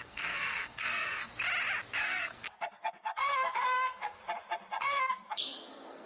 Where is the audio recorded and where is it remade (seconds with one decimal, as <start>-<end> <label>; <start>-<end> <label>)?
0.0-1.3 remade; 1.3-2.0 recorded; 2.0-4.2 remade; 4.2-4.8 recorded; 4.8-6.1 remade